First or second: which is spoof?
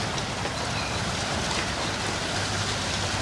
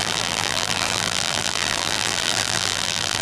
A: second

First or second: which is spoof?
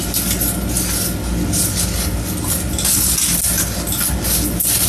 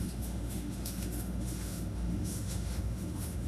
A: second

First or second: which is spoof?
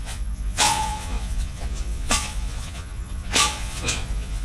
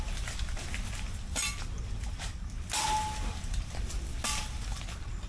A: first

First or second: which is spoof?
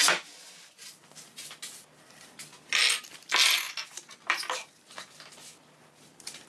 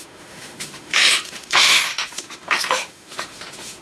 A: second